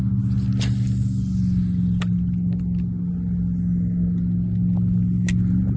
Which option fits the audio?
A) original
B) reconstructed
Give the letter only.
A